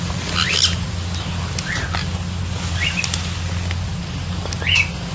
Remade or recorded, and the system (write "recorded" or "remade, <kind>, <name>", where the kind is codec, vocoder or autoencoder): recorded